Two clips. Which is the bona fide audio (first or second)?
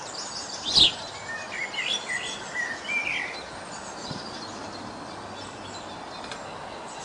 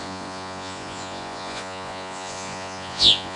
first